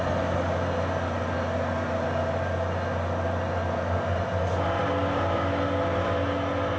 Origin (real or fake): real